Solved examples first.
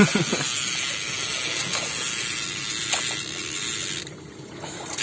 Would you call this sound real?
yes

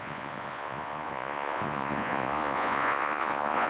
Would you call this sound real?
no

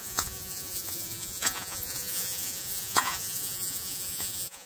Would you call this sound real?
no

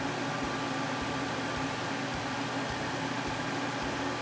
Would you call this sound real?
yes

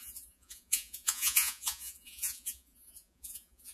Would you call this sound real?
no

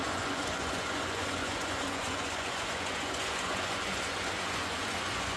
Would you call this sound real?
no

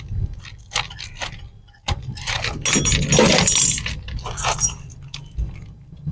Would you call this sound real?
yes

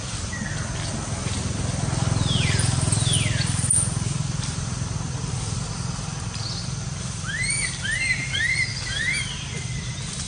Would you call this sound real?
yes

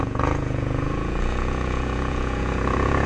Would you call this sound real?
no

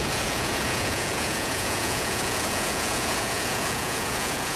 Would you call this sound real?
no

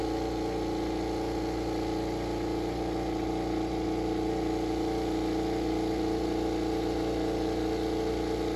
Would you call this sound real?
yes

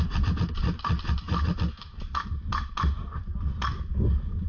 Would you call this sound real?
yes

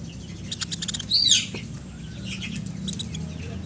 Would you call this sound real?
yes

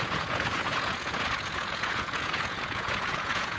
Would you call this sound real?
no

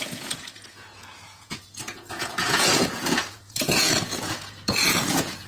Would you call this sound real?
no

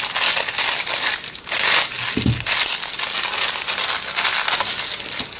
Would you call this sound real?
yes